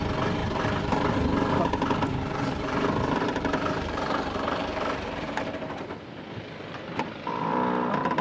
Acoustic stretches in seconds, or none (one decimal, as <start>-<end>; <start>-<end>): 0.0-0.4; 0.9-2.1; 5.6-8.2